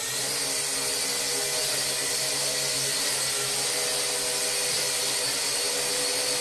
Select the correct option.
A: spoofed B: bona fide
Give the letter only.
B